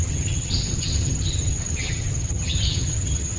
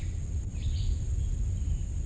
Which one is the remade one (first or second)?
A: first